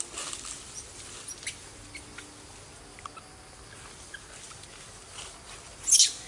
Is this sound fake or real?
real